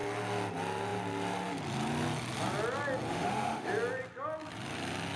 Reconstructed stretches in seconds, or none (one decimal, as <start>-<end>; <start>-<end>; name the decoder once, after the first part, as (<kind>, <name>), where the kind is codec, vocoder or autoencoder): 3.1-3.7 (autoencoder, DAC-VAE)